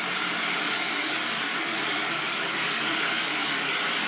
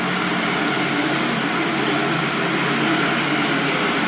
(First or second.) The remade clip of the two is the first